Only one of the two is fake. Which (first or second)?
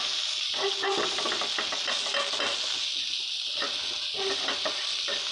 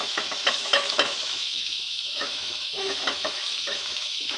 second